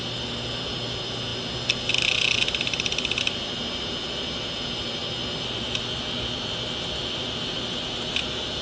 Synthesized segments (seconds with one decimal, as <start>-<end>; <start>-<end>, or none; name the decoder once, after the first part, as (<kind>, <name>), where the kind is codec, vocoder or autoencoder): none